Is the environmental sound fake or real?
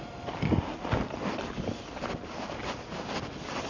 real